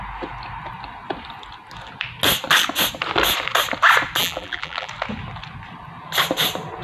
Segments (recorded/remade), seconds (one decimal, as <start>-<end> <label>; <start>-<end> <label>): 0.0-4.2 recorded; 4.2-4.9 remade; 4.9-6.8 recorded